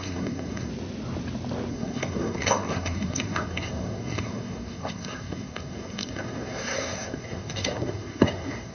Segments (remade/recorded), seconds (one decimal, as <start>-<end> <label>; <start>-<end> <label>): 0.0-0.7 remade; 0.7-1.7 recorded; 1.7-8.7 remade